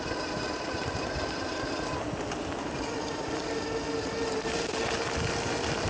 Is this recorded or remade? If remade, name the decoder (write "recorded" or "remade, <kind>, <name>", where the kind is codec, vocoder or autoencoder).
recorded